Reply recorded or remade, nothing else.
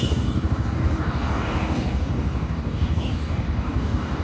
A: remade